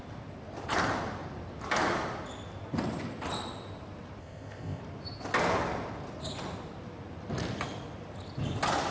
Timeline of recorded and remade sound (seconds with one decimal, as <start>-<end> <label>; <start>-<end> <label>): 0.0-4.2 recorded; 4.2-4.8 remade; 4.8-8.9 recorded